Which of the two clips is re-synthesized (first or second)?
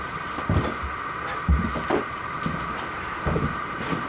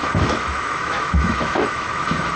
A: second